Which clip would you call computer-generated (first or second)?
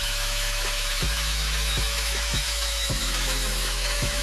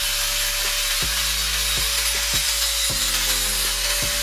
first